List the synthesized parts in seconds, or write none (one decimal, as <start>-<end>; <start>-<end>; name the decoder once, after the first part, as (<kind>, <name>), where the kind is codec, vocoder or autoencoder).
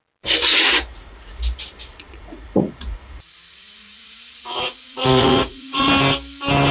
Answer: 0.4-1.4 (vocoder, Vocos); 1.9-5.9